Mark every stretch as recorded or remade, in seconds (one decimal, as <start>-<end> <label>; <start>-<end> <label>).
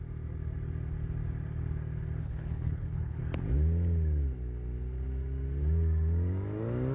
0.0-2.2 recorded; 2.2-3.2 remade; 3.2-6.9 recorded